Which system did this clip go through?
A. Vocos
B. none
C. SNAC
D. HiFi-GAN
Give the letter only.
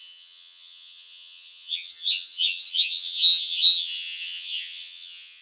D